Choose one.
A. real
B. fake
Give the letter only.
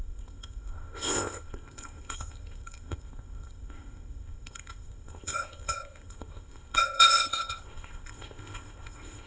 B